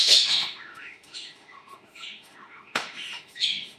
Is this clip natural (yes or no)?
no